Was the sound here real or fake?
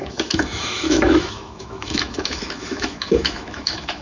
fake